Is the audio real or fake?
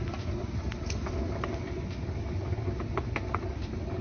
real